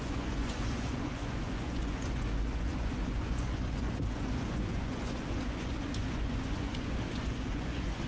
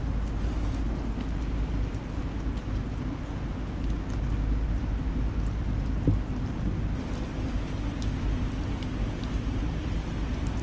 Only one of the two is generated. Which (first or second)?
first